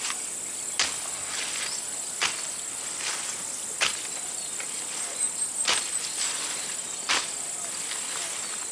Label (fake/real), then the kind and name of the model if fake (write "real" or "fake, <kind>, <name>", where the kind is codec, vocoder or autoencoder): real